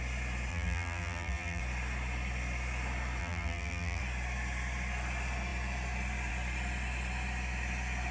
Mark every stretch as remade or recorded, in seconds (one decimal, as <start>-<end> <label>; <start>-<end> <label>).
0.0-0.5 recorded; 0.5-1.6 remade; 1.6-3.2 recorded; 3.2-4.0 remade; 4.0-8.1 recorded